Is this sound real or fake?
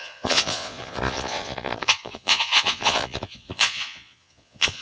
fake